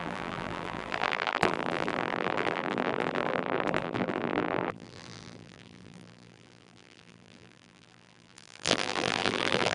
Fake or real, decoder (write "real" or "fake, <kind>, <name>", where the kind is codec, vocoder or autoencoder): fake, vocoder, BigVGAN v2